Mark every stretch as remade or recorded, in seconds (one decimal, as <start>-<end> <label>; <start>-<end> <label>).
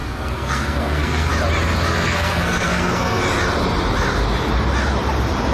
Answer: 0.0-1.3 remade; 1.3-1.9 recorded; 1.9-3.2 remade; 3.2-5.5 recorded